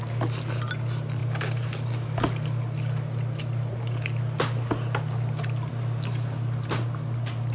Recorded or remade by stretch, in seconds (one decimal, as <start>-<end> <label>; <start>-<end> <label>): 0.0-7.5 recorded